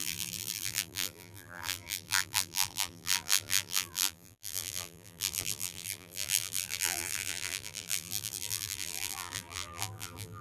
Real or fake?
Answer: fake